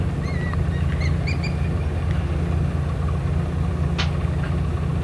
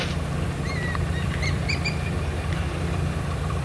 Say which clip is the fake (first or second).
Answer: second